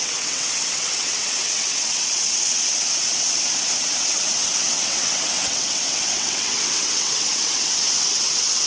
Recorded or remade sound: remade